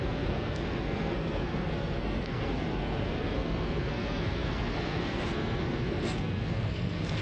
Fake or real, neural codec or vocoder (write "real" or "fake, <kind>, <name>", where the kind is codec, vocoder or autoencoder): fake, codec, SNAC